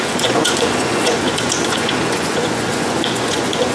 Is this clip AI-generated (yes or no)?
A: yes